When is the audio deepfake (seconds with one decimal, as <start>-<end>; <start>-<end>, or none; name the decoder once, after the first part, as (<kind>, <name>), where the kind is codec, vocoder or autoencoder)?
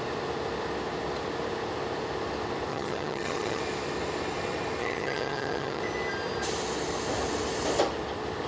2.7-3.6 (vocoder, HiFi-GAN); 4.8-5.8